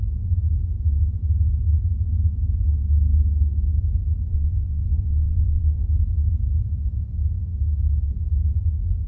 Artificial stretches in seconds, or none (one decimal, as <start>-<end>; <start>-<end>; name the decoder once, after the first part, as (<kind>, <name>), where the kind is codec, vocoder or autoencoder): 4.3-5.8 (vocoder, Vocos)